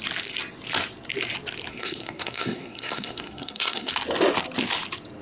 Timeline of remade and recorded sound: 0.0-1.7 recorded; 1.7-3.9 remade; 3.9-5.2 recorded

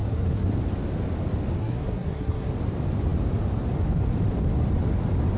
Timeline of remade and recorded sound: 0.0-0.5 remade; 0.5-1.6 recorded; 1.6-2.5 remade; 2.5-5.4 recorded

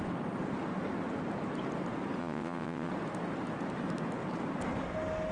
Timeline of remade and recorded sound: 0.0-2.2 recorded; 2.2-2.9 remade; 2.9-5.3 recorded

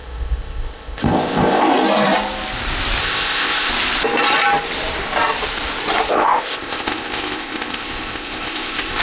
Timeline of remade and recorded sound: 0.0-1.7 remade; 1.7-3.0 recorded; 3.0-3.7 remade; 3.7-6.1 recorded; 6.1-9.0 remade

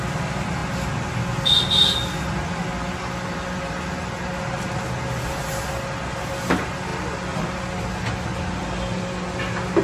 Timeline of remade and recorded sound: 0.0-9.8 recorded